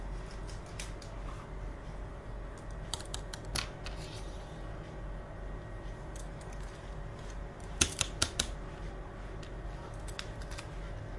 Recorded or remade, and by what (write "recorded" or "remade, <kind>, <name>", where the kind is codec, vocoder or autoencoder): recorded